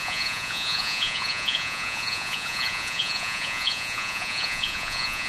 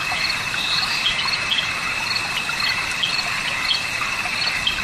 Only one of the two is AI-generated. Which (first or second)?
first